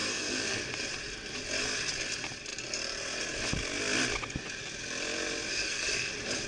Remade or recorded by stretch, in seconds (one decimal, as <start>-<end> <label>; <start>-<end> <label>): 0.0-0.6 remade; 0.6-5.5 recorded; 5.5-6.1 remade; 6.1-6.5 recorded